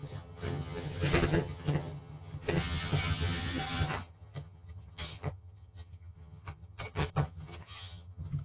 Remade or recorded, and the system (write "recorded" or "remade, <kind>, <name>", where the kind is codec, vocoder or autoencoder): remade, vocoder, HiFi-GAN